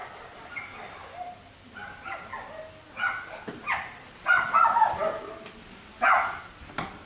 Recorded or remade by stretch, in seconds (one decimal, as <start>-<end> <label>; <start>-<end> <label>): 0.0-7.1 recorded